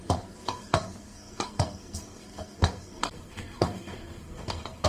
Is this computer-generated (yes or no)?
yes